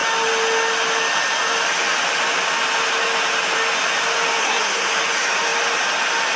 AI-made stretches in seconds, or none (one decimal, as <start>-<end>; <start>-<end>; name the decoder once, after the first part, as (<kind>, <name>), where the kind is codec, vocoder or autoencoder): 4.4-4.9 (codec, SNAC)